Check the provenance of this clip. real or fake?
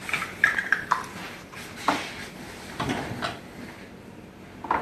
fake